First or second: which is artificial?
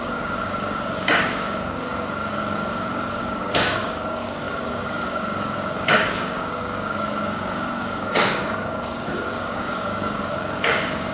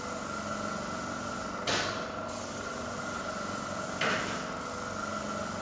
first